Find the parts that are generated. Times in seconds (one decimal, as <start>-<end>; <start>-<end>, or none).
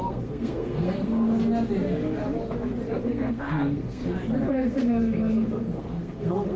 0.0-1.3; 3.0-4.0; 4.5-6.6